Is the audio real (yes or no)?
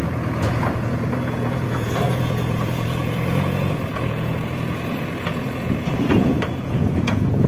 no